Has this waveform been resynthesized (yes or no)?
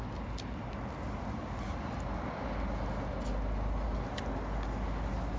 no